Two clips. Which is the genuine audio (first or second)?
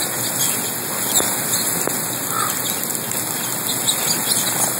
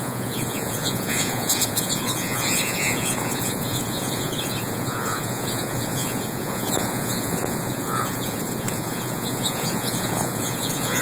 first